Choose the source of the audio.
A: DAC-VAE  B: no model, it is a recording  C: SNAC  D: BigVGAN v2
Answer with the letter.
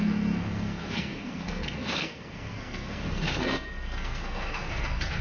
C